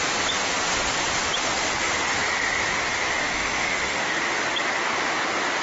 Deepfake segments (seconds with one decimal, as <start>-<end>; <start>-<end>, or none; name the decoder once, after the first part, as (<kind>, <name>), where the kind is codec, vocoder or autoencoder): 3.2-4.2 (autoencoder, DAC-VAE)